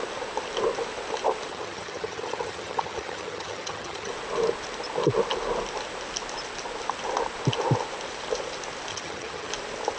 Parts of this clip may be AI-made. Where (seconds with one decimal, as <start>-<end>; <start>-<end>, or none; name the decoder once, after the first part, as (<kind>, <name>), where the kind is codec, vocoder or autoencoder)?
1.5-4.1 (vocoder, HiFi-GAN); 8.9-9.5